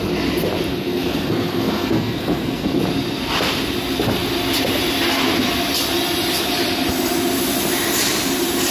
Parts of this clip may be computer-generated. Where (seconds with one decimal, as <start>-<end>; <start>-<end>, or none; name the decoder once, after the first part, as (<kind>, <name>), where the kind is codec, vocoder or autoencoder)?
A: 0.7-2.8 (codec, SNAC)